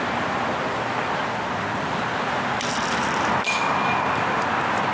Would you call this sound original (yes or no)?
yes